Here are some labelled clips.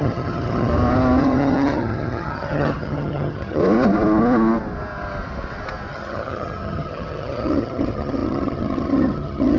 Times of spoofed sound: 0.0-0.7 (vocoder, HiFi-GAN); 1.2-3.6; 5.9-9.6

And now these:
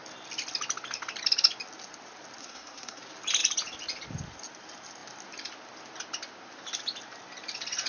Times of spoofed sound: 2.4-3.0 (codec, SNAC)

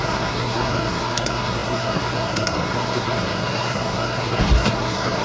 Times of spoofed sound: 0.0-5.2 (codec, SNAC)

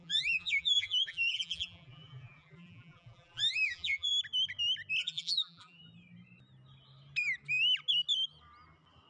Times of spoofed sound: 0.0-4.1 (vocoder, BigVGAN v2); 5.0-5.8

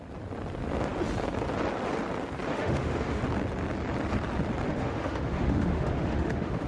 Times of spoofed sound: 2.5-3.2 (autoencoder, DAC-VAE); 4.7-6.7

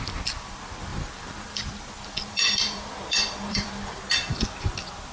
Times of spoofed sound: 0.9-4.0 (vocoder, BigVGAN v2)

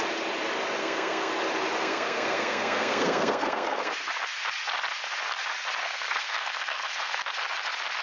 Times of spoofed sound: 0.8-1.3 (codec, SNAC); 1.8-3.9; 5.8-7.2